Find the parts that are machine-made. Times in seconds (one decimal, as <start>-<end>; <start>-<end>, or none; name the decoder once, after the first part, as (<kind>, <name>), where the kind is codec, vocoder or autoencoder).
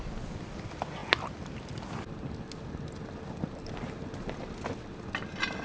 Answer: none